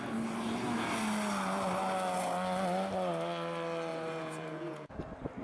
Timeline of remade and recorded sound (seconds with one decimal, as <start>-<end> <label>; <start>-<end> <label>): 0.0-3.9 recorded; 3.9-5.0 remade; 5.0-5.4 recorded